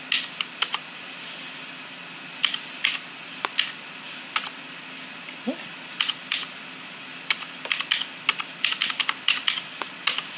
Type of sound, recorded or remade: recorded